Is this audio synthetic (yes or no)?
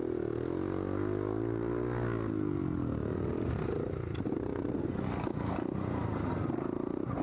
no